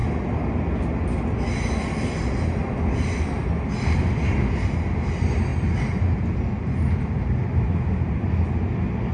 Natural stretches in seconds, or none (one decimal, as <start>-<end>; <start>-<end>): 0.0-9.1